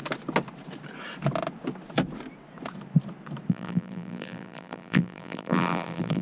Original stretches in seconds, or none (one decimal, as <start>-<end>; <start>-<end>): 0.0-3.5